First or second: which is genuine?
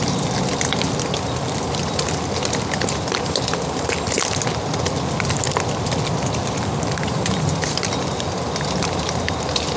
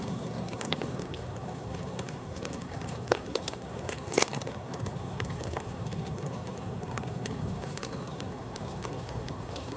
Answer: first